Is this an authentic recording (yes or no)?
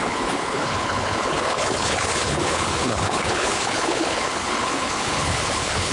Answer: no